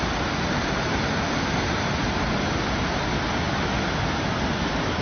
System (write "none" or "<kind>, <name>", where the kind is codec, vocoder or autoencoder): none